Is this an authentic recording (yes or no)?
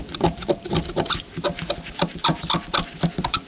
no